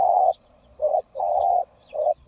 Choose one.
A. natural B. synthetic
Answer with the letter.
B